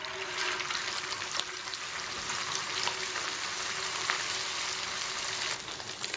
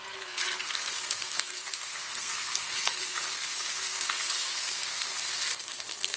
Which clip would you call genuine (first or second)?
first